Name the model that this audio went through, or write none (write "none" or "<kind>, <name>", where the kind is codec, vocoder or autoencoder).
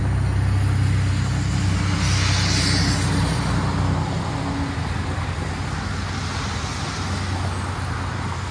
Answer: none